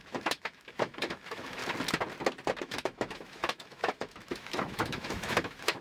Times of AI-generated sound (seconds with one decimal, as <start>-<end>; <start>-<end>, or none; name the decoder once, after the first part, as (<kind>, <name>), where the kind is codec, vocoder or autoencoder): 0.0-1.6 (autoencoder, DAC-VAE); 2.6-5.8